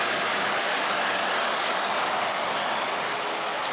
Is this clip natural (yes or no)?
no